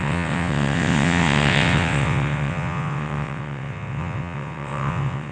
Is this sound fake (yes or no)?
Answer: yes